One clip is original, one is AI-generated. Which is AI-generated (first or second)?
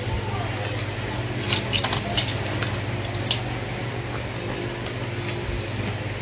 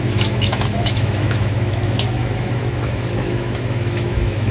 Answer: second